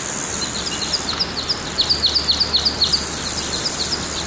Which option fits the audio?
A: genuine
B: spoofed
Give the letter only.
A